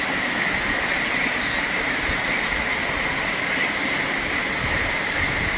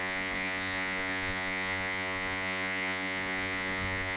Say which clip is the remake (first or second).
second